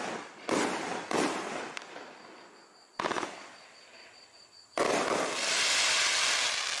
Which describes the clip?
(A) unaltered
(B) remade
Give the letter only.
A